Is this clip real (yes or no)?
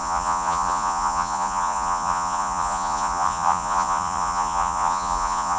no